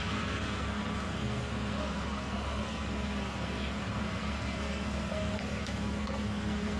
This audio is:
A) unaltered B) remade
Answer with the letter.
B